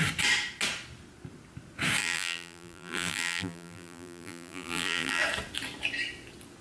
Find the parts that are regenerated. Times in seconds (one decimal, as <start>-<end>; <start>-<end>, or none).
2.0-5.2